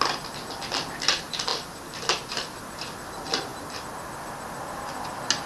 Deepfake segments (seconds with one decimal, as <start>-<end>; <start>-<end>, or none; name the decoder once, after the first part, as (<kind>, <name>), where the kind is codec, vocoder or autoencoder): none